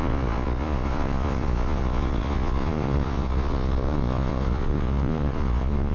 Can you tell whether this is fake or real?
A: fake